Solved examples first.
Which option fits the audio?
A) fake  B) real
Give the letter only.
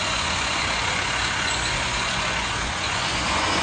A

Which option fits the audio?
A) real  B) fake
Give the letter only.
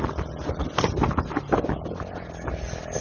A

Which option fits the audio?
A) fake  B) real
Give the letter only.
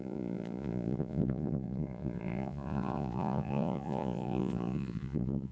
A